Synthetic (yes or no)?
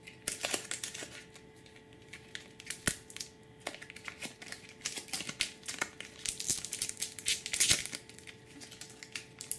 no